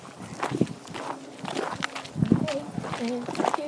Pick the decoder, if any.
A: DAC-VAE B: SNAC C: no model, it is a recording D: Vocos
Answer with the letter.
C